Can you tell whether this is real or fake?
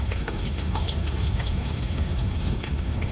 fake